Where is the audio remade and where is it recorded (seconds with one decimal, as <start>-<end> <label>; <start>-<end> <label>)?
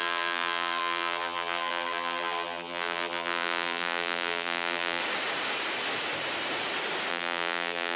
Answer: 0.0-5.0 remade; 5.0-7.1 recorded; 7.1-8.0 remade